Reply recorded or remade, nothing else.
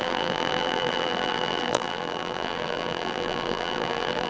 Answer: remade